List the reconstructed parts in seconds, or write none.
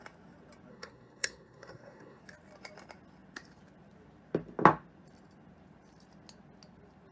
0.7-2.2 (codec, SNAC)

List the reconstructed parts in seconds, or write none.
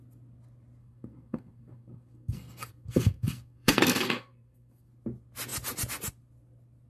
0.8-4.9 (codec, SNAC)